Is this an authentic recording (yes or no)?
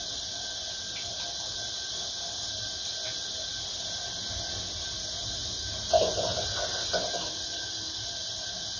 yes